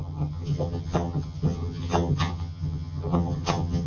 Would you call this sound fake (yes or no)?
yes